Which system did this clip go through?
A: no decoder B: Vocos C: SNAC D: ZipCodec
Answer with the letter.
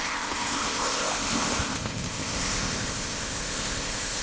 D